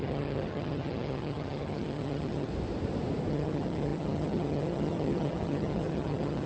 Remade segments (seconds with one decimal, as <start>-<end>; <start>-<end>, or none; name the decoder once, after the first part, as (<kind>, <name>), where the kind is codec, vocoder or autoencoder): 0.0-2.5 (vocoder, HiFi-GAN); 3.3-6.5